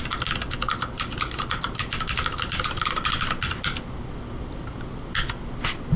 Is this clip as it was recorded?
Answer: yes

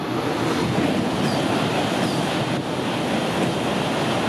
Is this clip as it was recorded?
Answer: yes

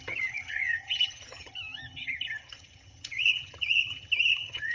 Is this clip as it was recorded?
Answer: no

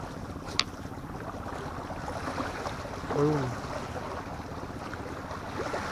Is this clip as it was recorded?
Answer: yes